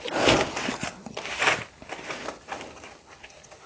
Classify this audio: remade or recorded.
recorded